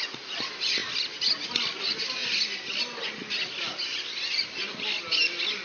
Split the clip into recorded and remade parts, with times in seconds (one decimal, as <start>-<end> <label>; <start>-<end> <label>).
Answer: 0.0-5.6 recorded